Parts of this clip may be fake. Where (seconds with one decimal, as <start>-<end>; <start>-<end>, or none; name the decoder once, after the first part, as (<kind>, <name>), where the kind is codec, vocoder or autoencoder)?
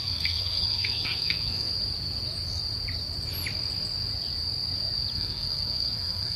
0.0-1.7 (codec, SNAC); 5.1-6.4